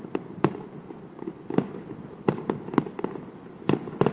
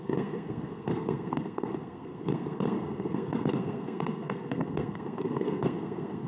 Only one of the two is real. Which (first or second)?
first